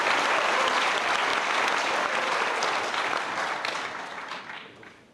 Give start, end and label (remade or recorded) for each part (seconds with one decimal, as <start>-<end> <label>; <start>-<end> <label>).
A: 0.0-5.1 recorded